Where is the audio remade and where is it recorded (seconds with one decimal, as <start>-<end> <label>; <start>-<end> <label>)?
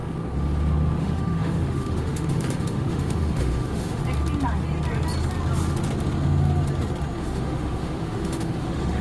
0.0-1.0 recorded; 1.0-4.0 remade; 4.0-7.2 recorded; 7.2-9.0 remade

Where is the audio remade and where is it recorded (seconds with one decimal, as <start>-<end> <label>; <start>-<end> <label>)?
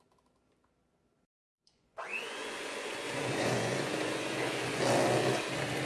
0.0-1.3 recorded; 1.3-4.8 remade; 4.8-5.9 recorded